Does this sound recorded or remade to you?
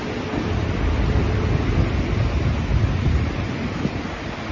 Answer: recorded